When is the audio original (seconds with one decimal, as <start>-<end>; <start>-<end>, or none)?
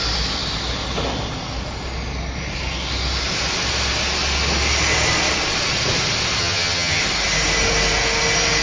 0.0-6.4; 7.0-8.6